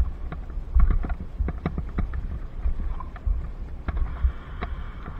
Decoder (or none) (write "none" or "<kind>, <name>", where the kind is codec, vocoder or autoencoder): vocoder, BigVGAN v2